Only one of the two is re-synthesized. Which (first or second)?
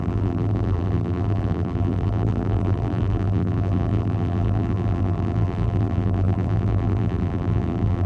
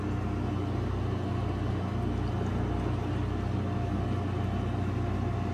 first